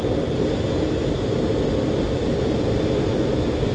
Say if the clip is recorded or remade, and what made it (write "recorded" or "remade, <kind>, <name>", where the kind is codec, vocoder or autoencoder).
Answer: recorded